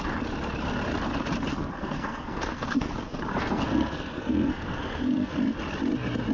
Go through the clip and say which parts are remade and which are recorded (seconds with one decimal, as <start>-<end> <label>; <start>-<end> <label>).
0.0-1.5 recorded; 1.5-2.9 remade; 2.9-3.3 recorded; 3.3-5.4 remade; 5.4-6.3 recorded